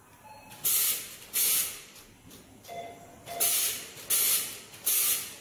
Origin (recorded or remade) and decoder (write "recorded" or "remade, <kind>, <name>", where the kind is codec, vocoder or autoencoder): recorded